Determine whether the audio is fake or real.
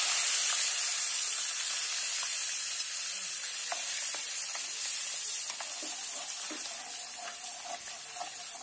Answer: real